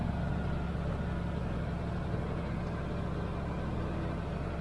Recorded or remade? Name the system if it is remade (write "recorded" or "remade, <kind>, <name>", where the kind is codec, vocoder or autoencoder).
recorded